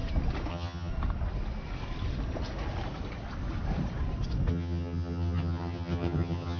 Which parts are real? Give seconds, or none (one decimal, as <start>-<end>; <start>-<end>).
0.0-0.5; 0.9-4.5